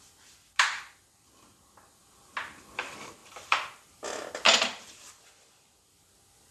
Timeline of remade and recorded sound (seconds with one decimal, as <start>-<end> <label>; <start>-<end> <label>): 0.0-6.5 recorded